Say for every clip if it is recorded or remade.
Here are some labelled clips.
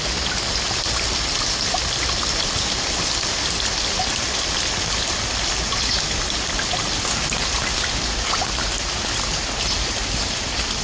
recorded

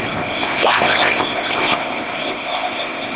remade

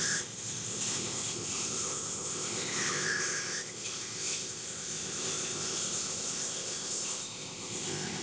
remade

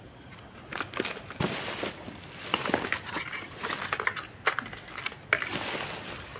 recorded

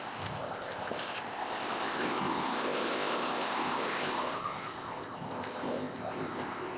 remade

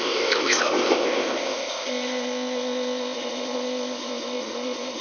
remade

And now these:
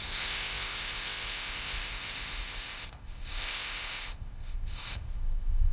remade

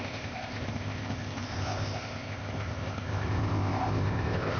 remade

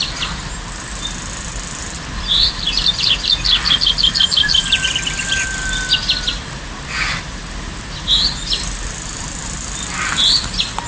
recorded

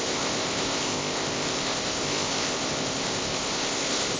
remade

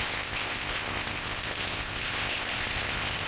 remade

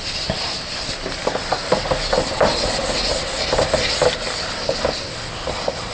recorded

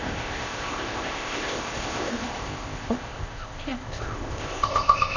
remade